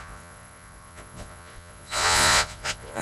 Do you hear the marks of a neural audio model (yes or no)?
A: yes